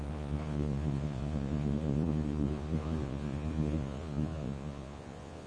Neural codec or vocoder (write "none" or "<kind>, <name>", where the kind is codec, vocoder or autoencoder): vocoder, Vocos